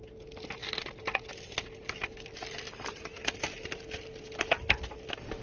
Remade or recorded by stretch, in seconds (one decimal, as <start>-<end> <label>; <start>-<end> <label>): 0.0-5.4 recorded

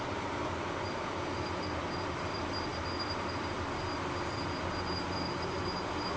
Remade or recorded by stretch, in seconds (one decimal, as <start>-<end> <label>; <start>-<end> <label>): 0.0-6.2 recorded